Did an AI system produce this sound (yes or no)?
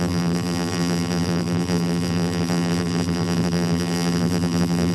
yes